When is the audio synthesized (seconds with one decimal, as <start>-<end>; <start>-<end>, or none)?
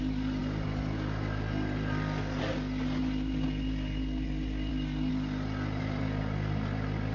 none